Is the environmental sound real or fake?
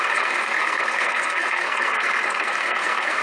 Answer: fake